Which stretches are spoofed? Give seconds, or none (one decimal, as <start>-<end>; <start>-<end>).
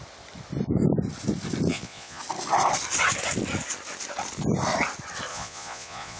1.7-2.2; 5.3-6.2